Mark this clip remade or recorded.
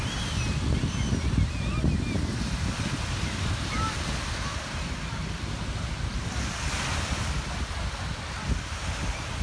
recorded